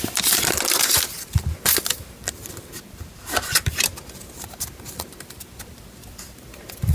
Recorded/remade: remade